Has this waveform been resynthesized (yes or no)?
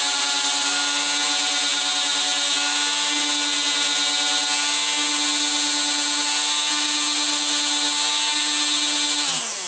no